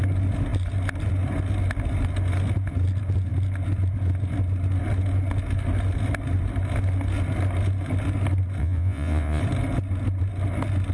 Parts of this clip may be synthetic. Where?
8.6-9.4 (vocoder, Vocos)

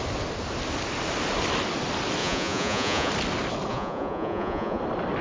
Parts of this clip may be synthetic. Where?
2.2-3.1 (vocoder, Vocos); 3.7-4.8

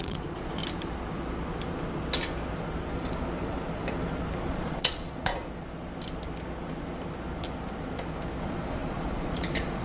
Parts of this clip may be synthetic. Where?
0.0-0.6 (vocoder, Vocos); 4.5-5.3; 8.4-9.8